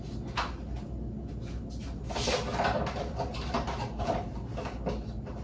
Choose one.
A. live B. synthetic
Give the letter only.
A